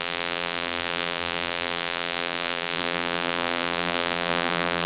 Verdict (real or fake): fake